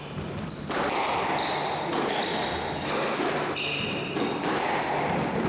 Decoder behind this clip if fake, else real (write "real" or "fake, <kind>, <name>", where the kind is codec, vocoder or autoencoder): real